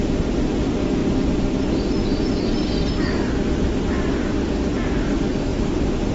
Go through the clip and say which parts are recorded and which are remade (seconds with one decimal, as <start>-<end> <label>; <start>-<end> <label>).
0.0-1.0 recorded; 1.0-4.7 remade; 4.7-6.1 recorded